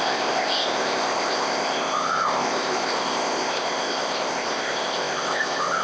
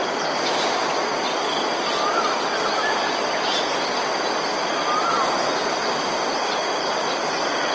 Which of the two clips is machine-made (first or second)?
first